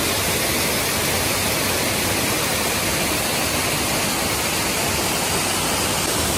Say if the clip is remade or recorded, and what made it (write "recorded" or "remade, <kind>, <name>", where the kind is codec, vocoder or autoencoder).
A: recorded